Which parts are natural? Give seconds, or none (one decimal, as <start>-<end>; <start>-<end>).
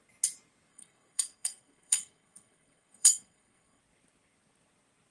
0.0-0.7; 3.8-5.1